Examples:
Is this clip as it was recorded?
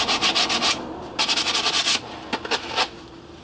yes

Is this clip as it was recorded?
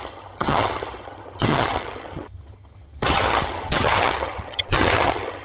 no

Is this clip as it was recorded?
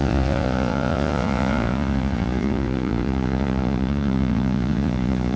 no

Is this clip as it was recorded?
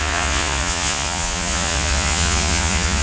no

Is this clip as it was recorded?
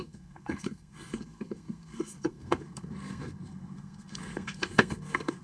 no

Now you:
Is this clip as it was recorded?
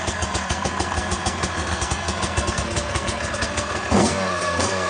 no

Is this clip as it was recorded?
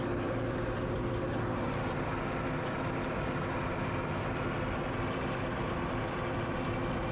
no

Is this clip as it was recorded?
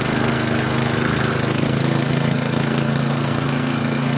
no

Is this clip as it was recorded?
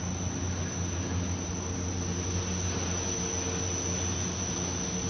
yes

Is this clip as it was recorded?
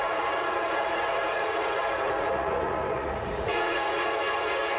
no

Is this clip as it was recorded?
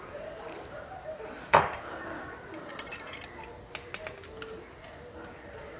yes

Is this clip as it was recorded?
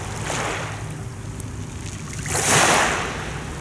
yes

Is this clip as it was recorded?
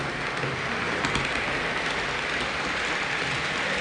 yes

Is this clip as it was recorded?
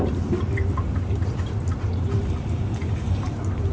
no